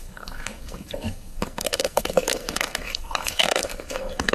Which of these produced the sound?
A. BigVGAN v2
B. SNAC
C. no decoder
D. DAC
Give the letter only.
B